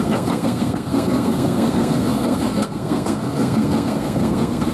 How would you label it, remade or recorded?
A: remade